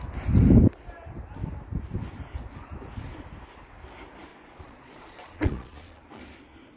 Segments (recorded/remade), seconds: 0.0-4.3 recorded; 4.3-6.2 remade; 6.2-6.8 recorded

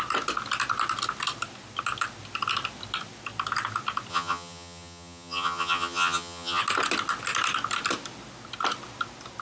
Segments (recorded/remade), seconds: 0.0-4.1 recorded; 4.1-6.6 remade; 6.6-9.4 recorded

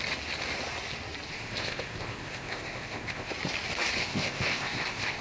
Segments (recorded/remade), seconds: 0.0-1.3 recorded; 1.3-3.3 remade; 3.3-4.0 recorded; 4.0-5.2 remade

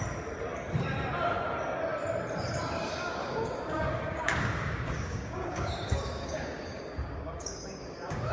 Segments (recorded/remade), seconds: 0.0-3.2 recorded; 3.2-8.3 remade

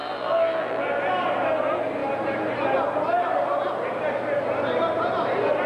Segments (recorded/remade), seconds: 0.0-1.0 remade; 1.0-5.7 recorded

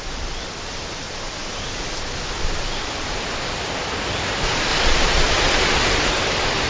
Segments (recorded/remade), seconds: 0.0-4.7 recorded; 4.7-6.1 remade; 6.1-6.7 recorded

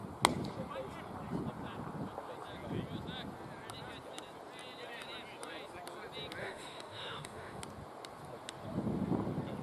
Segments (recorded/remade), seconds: 0.0-6.4 recorded; 6.4-7.6 remade; 7.6-9.6 recorded

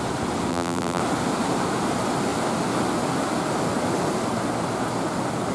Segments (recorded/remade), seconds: 0.0-0.5 recorded; 0.5-1.0 remade; 1.0-5.5 recorded